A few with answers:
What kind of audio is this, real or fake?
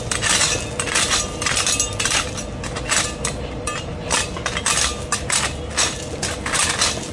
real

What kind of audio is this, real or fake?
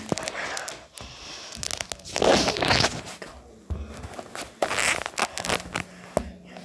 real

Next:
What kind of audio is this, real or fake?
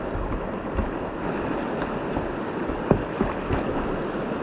real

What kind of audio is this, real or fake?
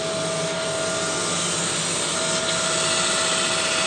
real